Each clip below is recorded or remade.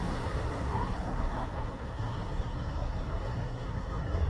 remade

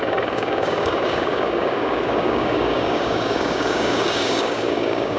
remade